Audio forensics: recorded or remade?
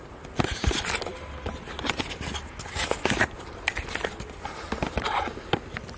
recorded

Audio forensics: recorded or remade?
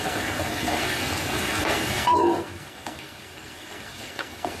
remade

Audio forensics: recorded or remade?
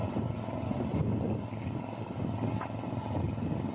recorded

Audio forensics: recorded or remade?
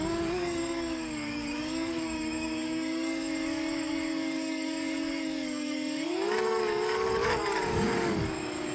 remade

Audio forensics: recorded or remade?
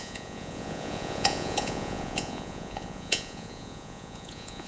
remade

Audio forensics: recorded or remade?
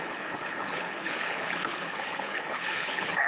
remade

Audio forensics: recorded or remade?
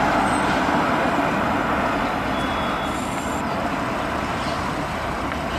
recorded